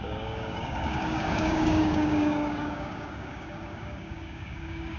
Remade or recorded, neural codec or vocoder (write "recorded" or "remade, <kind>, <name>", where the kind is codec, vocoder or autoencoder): remade, codec, DAC